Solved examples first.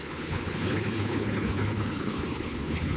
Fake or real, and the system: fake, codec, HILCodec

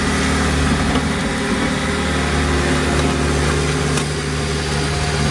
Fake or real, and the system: real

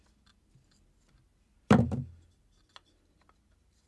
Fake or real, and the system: real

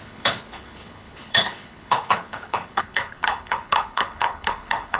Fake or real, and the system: fake, codec, HILCodec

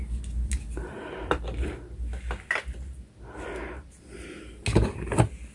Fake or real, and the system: real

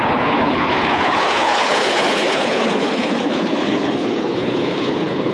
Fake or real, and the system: fake, codec, HILCodec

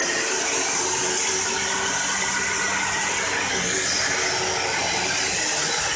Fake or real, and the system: real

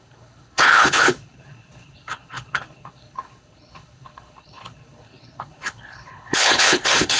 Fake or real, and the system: fake, codec, HILCodec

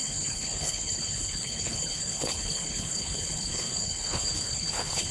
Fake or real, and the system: fake, codec, HILCodec